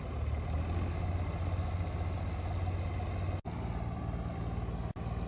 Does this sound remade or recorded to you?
recorded